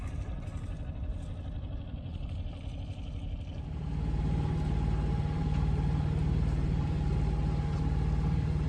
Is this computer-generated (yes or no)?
no